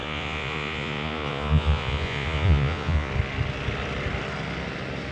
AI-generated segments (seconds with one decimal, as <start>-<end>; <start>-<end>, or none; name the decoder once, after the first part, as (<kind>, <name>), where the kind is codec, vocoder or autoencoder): 0.0-3.1 (vocoder, Vocos)